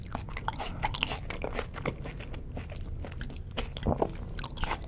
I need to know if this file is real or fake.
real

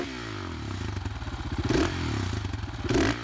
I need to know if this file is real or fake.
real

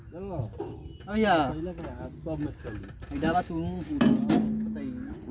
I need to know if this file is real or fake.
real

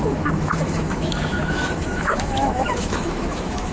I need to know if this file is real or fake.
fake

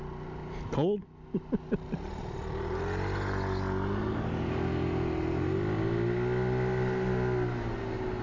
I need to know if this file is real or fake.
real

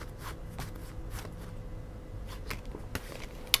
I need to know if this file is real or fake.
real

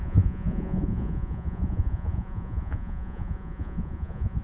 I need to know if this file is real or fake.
fake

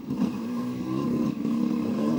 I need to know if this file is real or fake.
fake